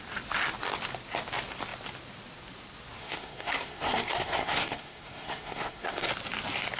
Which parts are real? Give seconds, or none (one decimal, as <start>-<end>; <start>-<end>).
0.0-3.0; 6.1-6.8